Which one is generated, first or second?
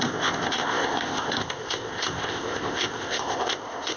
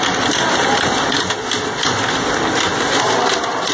first